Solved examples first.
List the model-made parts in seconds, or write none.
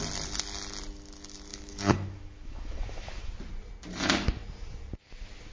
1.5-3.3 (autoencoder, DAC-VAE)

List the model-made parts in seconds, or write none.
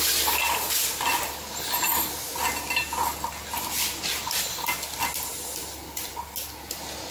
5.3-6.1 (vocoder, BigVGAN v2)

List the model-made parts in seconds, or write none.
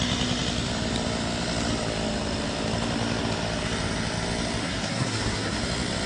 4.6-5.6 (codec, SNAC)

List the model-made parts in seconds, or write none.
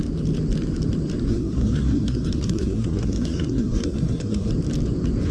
1.3-4.5 (codec, SNAC)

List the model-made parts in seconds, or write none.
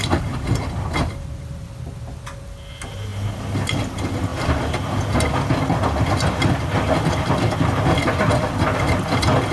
none